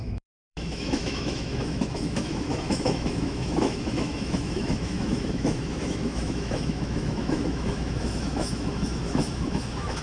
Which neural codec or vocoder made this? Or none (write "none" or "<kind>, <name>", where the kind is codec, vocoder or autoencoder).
autoencoder, DAC-VAE